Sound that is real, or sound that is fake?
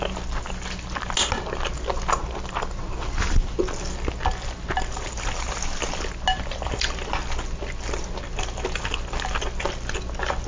real